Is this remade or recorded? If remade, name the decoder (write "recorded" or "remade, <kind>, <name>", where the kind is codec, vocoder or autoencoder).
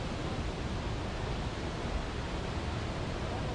recorded